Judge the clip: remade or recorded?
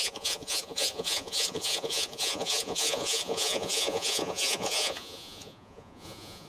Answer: remade